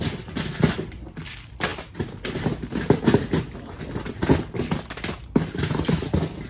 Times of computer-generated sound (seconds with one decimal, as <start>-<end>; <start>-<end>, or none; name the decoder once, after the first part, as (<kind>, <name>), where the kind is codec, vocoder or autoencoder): none